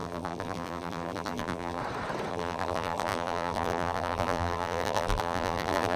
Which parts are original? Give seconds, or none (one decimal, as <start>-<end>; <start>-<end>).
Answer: 1.8-2.3